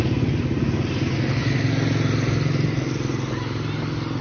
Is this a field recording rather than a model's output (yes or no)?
yes